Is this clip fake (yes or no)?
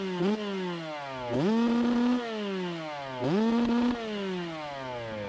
no